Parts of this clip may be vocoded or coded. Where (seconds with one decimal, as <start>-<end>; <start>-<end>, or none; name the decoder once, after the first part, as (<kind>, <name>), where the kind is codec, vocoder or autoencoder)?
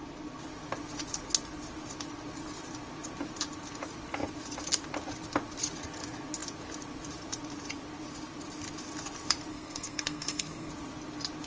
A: 9.5-10.7 (codec, SNAC)